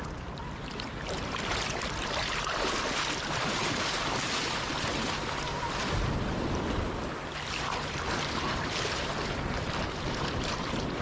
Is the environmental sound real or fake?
fake